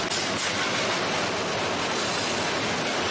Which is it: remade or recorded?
recorded